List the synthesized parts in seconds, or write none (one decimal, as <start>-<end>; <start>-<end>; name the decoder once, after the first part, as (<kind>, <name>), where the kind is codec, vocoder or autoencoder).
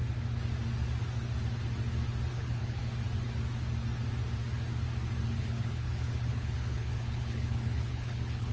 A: 2.3-2.8 (codec, HILCodec); 5.4-8.5